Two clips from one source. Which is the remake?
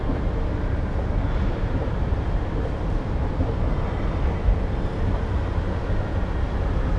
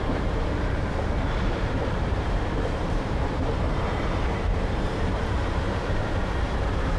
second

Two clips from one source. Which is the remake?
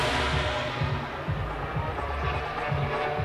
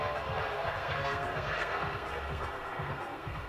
second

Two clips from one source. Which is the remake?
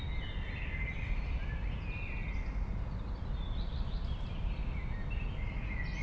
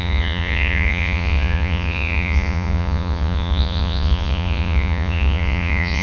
second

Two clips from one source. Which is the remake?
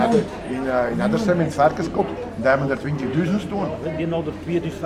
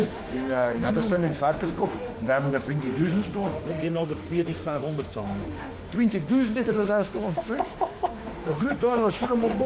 second